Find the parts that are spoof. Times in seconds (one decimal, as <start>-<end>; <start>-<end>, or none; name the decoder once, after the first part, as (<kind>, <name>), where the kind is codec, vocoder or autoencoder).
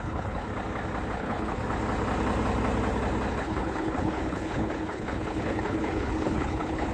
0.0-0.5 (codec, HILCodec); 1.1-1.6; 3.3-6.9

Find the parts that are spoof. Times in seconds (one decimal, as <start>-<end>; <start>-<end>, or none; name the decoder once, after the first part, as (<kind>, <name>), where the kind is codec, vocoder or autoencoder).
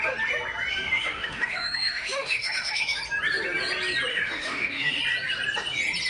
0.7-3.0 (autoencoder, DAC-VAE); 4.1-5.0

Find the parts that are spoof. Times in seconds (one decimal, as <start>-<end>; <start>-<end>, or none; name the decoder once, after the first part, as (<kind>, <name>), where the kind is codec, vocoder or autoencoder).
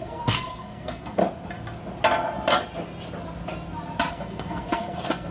0.0-1.2 (codec, SNAC); 4.1-5.3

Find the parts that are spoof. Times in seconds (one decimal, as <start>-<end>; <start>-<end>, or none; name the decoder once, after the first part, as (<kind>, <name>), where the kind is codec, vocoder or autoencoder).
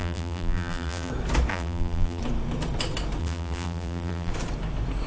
0.0-1.1 (vocoder, BigVGAN v2); 1.5-2.2; 3.2-4.3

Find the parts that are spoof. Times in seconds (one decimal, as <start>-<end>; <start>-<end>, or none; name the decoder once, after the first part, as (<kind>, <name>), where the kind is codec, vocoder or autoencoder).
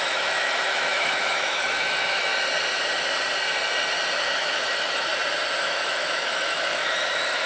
0.0-2.3 (autoencoder, DAC-VAE); 4.2-5.1; 5.6-7.5